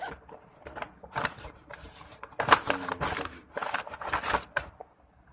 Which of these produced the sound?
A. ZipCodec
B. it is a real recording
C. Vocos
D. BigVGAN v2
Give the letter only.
D